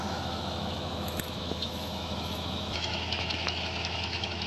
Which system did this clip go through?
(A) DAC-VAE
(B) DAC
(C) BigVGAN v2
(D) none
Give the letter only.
A